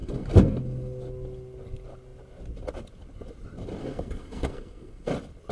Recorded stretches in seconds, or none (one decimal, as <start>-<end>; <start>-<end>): 0.6-3.8; 5.1-5.5